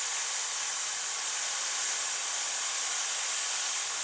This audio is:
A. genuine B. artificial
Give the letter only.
A